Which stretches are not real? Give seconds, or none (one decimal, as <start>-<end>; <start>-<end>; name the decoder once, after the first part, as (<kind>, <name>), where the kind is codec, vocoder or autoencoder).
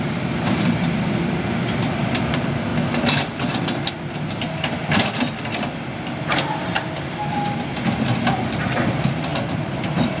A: none